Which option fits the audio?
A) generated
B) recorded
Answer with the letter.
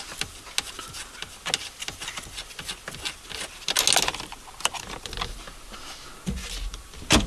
B